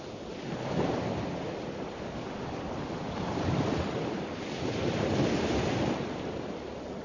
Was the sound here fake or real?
fake